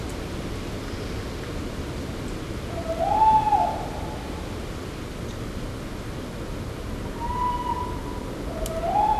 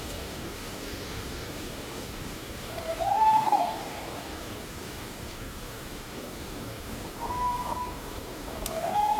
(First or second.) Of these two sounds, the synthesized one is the second